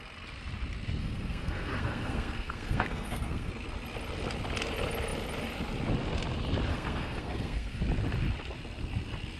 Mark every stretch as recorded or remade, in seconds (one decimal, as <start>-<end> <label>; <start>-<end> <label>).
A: 0.0-1.0 recorded; 1.0-3.5 remade; 3.5-6.7 recorded; 6.7-7.8 remade; 7.8-9.4 recorded